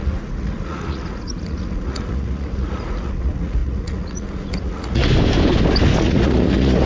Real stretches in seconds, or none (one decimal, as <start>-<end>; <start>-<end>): 5.0-6.0